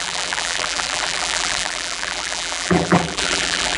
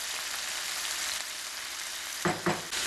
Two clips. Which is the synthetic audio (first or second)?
first